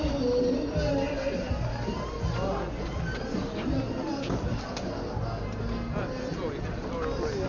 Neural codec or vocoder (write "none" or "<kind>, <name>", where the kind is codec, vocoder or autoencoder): none